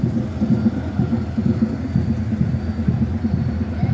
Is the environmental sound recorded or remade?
recorded